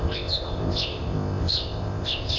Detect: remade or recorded remade